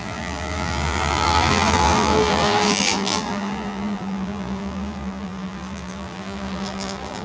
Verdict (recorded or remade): remade